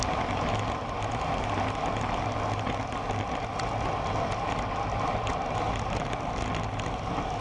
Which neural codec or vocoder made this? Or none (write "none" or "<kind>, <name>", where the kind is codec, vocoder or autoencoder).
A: none